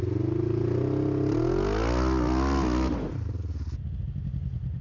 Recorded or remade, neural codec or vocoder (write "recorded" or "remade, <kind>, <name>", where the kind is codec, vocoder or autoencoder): recorded